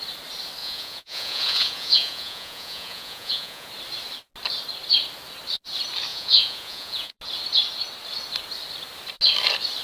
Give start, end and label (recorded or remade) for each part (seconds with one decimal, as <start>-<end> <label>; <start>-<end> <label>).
0.0-0.6 recorded; 0.6-3.7 remade; 3.7-6.1 recorded; 6.1-7.2 remade; 7.2-9.8 recorded